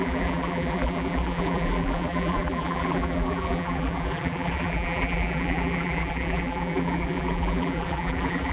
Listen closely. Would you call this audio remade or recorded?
remade